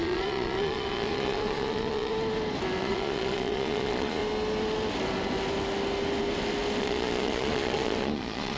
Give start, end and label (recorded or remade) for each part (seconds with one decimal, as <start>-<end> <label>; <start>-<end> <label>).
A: 0.0-2.1 remade; 2.1-2.8 recorded; 2.8-4.2 remade; 4.2-6.8 recorded; 6.8-8.6 remade